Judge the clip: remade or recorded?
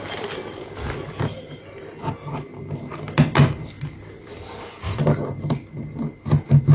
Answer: recorded